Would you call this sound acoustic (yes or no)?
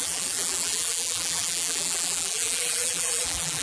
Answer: no